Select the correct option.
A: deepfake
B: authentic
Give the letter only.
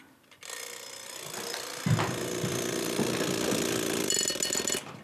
B